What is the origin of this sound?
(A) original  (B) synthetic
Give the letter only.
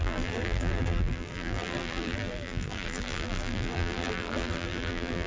B